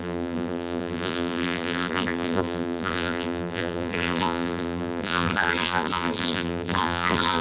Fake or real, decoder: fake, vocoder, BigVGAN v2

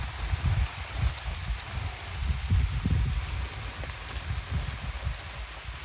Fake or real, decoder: real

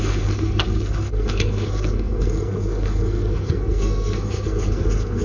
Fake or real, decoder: fake, codec, SNAC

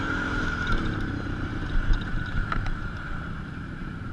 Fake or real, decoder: fake, vocoder, BigVGAN v2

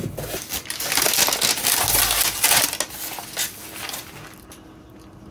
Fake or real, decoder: real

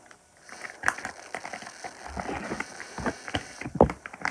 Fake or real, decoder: real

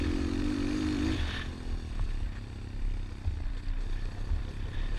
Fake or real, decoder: fake, vocoder, BigVGAN v2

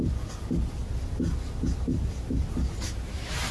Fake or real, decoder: real